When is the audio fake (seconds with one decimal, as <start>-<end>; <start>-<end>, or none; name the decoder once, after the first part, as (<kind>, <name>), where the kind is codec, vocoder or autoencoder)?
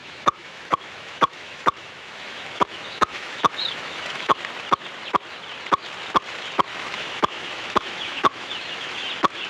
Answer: 0.0-4.4 (autoencoder, DAC-VAE); 6.7-9.1